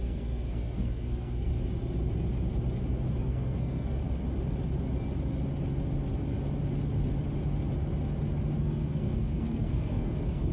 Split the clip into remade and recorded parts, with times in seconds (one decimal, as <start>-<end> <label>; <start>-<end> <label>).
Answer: 0.0-1.5 remade; 1.5-3.2 recorded; 3.2-4.0 remade; 4.0-8.6 recorded; 8.6-10.5 remade